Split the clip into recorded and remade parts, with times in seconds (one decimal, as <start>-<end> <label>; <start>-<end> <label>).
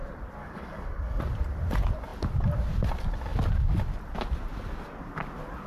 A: 0.0-0.4 recorded; 0.4-1.2 remade; 1.2-5.7 recorded